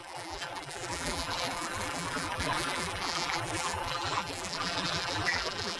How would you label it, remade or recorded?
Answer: remade